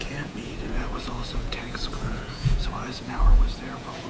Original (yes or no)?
no